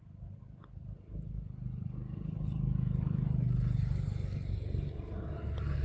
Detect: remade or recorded recorded